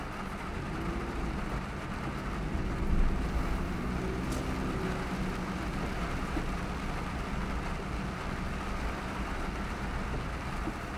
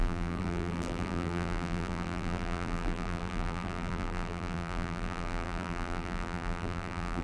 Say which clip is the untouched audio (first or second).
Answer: first